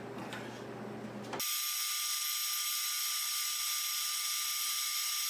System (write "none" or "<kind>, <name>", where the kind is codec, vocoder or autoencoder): none